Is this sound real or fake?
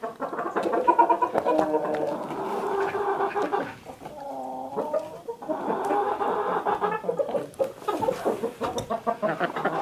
real